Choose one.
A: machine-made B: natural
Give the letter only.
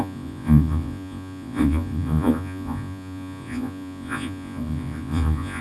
A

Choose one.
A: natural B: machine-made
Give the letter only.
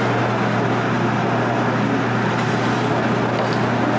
A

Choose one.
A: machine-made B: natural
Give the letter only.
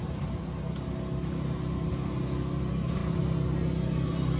B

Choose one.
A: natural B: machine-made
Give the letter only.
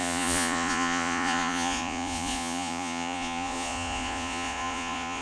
B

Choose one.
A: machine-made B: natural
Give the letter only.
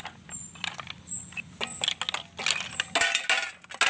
B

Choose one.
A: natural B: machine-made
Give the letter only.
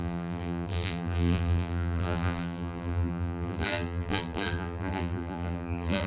B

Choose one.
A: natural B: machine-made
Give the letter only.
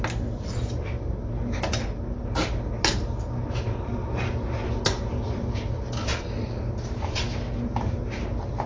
A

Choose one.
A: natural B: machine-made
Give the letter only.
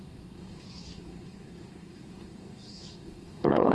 B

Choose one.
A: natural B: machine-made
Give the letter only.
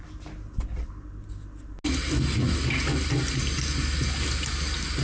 A